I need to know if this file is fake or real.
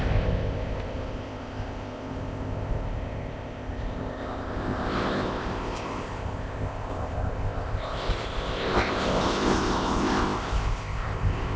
fake